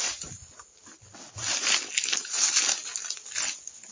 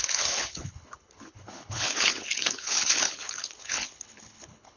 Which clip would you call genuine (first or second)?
first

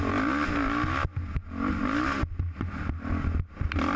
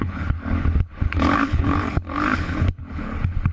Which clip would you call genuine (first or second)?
first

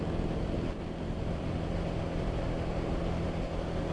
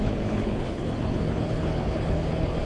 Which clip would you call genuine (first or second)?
first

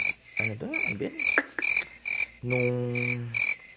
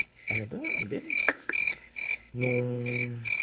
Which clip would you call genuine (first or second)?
first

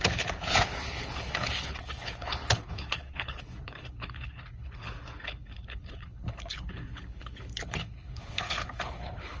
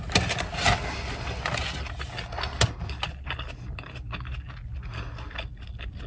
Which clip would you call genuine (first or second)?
second